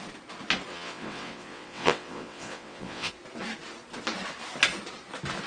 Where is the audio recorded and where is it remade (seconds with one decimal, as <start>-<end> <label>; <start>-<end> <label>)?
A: 0.0-0.7 recorded; 0.7-3.1 remade; 3.1-5.5 recorded